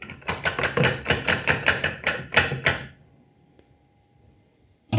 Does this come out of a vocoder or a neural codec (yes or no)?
no